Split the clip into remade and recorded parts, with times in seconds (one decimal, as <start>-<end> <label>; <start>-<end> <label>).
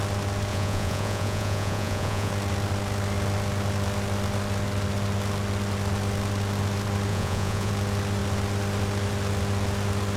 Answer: 0.0-0.5 recorded; 0.5-2.3 remade; 2.3-7.1 recorded; 7.1-7.7 remade; 7.7-10.2 recorded